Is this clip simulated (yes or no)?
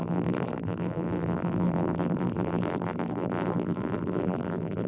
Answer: yes